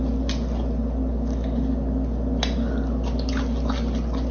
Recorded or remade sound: recorded